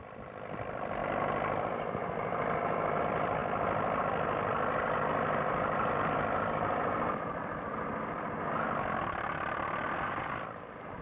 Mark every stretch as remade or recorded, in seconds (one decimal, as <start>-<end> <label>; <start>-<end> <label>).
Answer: 0.0-11.0 recorded